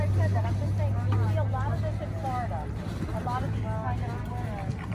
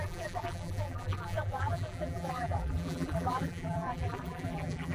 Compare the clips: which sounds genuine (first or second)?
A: first